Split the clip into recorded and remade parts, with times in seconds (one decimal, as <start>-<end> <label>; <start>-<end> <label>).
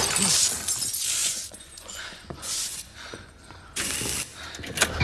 0.0-1.2 recorded; 1.2-3.9 remade; 3.9-5.0 recorded